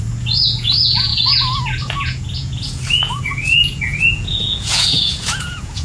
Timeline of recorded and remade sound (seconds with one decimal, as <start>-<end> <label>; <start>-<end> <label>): 0.0-5.8 remade